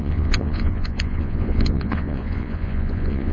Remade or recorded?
remade